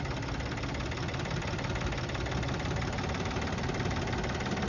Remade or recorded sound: recorded